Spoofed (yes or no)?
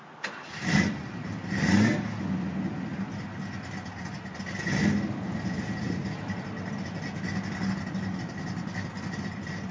no